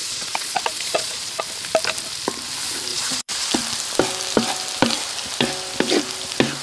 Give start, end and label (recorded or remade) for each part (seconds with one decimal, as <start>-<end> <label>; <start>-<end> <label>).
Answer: 0.0-1.4 remade; 1.4-2.9 recorded; 2.9-3.5 remade; 3.5-6.6 recorded